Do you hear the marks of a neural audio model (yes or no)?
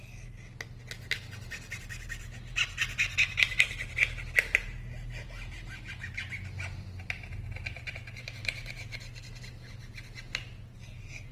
no